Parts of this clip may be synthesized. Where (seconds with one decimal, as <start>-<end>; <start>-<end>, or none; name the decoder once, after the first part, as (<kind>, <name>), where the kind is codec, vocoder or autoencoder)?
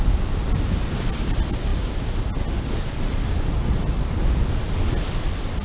none